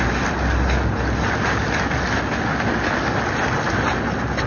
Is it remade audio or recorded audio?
recorded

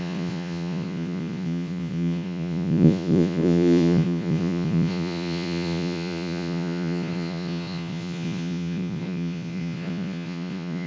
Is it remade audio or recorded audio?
remade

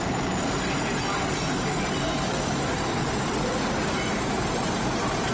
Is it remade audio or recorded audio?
recorded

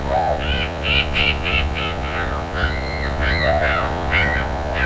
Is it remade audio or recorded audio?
remade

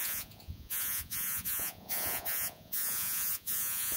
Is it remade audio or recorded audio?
remade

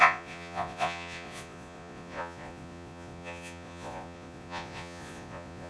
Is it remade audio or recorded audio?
remade